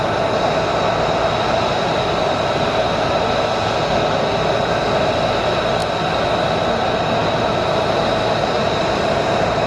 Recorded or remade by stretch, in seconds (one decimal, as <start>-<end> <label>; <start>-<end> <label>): 0.0-2.2 recorded; 2.2-3.3 remade; 3.3-7.2 recorded; 7.2-7.8 remade; 7.8-8.6 recorded; 8.6-9.7 remade